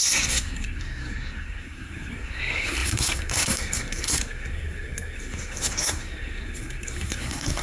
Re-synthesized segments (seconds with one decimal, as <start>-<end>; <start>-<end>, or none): 0.0-7.6